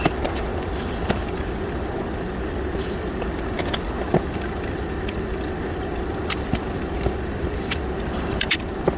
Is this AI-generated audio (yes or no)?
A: yes